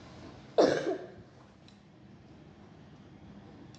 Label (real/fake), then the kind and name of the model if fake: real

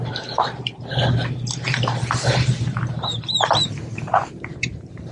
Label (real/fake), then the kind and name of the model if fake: fake, vocoder, BigVGAN v2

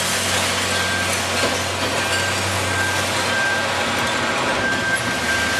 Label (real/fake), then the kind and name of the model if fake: real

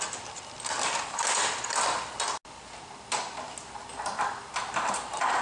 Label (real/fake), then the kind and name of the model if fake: real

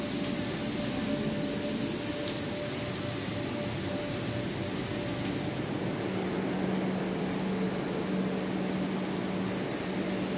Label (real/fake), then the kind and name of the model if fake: real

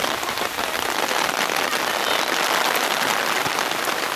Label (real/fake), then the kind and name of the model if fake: real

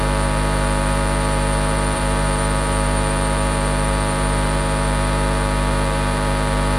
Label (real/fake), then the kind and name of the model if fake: fake, vocoder, BigVGAN v2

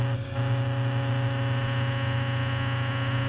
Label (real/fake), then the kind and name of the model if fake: real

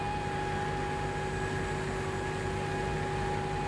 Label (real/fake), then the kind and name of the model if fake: real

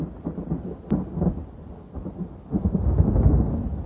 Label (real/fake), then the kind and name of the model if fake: real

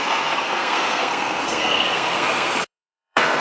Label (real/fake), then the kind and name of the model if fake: fake, codec, SNAC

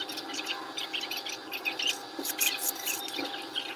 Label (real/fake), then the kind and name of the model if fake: real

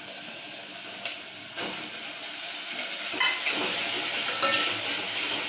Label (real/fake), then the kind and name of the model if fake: real